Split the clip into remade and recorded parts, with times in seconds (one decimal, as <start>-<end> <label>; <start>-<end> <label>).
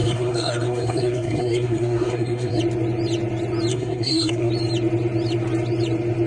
0.0-2.6 remade; 2.6-3.7 recorded; 3.7-4.5 remade; 4.5-6.3 recorded